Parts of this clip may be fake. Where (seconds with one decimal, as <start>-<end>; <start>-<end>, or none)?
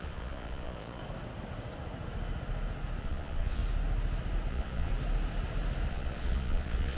0.0-1.0; 3.0-3.6; 4.5-4.9; 5.9-7.0